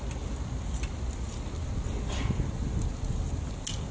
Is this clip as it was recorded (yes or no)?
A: yes